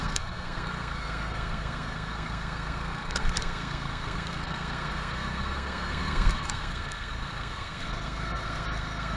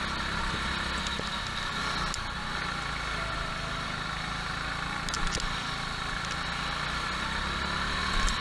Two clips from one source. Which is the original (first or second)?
second